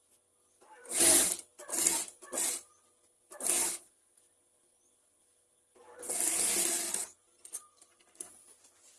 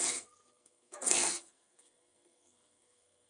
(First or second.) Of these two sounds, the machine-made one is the second